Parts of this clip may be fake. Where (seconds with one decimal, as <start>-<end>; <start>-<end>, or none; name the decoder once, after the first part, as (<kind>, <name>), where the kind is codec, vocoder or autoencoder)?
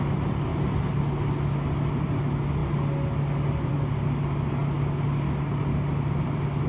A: none